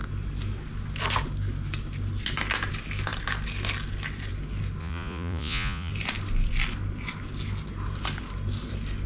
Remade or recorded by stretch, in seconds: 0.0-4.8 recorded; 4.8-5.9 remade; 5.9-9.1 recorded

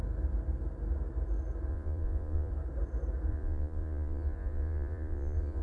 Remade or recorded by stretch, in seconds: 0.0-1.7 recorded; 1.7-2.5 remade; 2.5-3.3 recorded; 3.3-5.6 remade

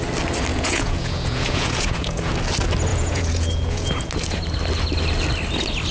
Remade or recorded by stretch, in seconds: 0.0-0.5 recorded; 0.5-2.3 remade; 2.3-2.9 recorded; 2.9-4.1 remade; 4.1-5.9 recorded

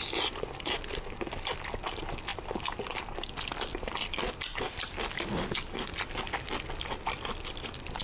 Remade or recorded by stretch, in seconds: 0.0-8.0 recorded

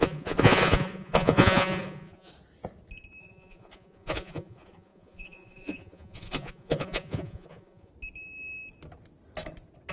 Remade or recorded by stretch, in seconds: 0.0-2.3 remade; 2.3-3.2 recorded; 3.2-7.9 remade; 7.9-9.9 recorded

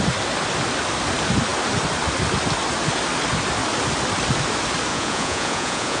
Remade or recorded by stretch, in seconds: 0.0-4.9 recorded; 4.9-6.0 remade